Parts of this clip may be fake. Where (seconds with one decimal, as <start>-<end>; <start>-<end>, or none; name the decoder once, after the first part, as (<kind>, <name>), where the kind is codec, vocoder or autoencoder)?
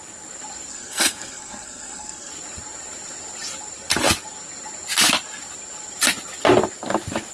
0.7-2.3 (codec, SNAC)